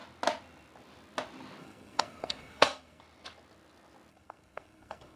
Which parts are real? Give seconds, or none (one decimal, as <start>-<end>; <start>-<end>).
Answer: 0.0-1.6; 3.0-4.1